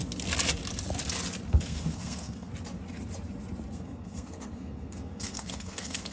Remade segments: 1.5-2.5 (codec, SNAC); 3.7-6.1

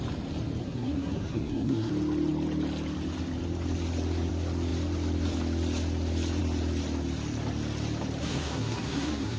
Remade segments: 0.6-1.9 (codec, SNAC); 8.2-9.4

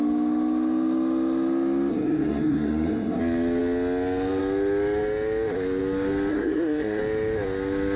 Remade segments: 1.9-3.2 (codec, SNAC); 6.3-7.0

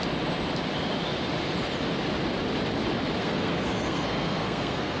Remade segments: 3.2-5.0 (codec, SNAC)

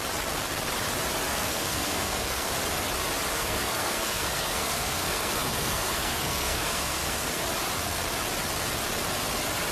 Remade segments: 1.3-2.5 (codec, SNAC); 3.3-7.4